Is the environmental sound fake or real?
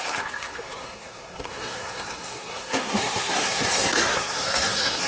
fake